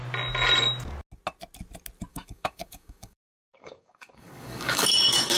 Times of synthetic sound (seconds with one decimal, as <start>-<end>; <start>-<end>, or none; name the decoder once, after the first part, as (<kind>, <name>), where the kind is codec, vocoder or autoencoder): 2.1-5.4 (codec, DAC)